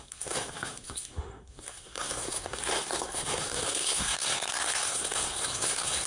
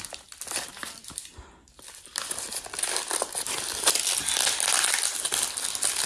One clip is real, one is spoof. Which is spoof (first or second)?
first